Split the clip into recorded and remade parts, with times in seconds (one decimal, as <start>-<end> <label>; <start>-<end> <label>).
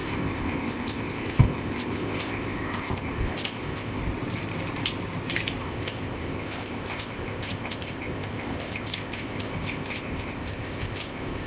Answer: 0.0-4.0 remade; 4.0-5.6 recorded; 5.6-11.5 remade